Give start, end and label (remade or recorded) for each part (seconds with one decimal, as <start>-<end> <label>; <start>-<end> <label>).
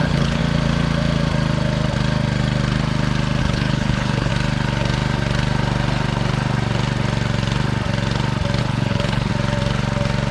0.0-0.4 remade; 0.4-3.4 recorded; 3.4-4.3 remade; 4.3-8.6 recorded; 8.6-9.3 remade; 9.3-10.3 recorded